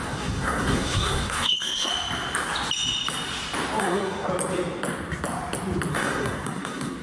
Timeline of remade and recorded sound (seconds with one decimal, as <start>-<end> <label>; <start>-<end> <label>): 0.0-1.9 remade; 1.9-3.8 recorded; 3.8-4.3 remade; 4.3-5.9 recorded; 5.9-7.0 remade